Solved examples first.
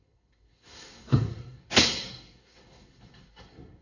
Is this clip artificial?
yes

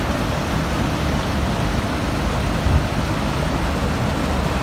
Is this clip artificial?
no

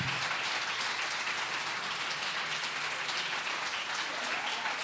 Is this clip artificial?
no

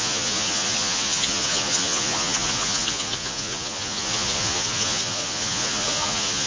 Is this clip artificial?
yes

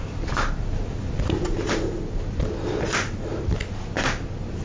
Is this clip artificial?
no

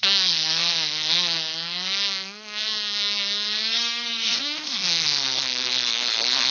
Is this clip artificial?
yes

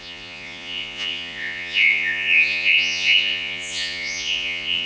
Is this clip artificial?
yes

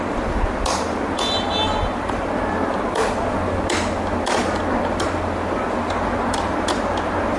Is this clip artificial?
no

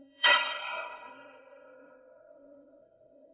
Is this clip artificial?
yes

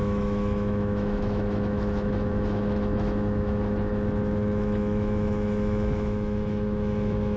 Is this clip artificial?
yes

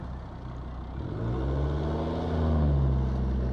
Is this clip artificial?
no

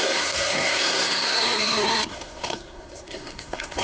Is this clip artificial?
yes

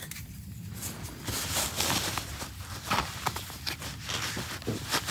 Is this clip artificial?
no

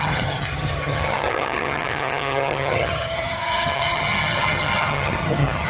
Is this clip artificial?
yes